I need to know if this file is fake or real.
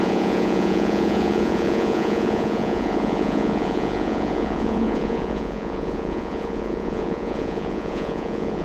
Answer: fake